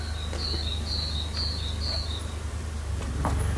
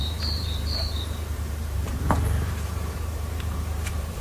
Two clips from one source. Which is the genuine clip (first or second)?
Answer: first